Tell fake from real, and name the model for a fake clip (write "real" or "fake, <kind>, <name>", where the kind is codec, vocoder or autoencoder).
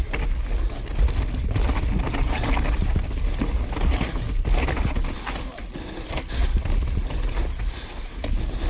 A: real